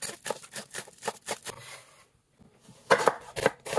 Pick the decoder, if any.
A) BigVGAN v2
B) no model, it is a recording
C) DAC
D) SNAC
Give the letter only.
B